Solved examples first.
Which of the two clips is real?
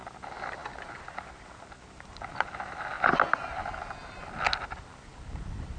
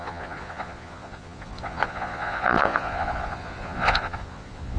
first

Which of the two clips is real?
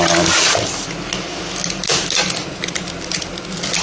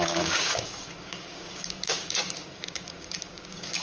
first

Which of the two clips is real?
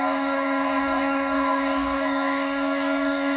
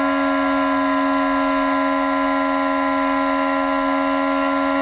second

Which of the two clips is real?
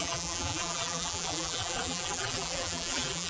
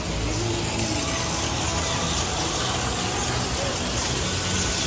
second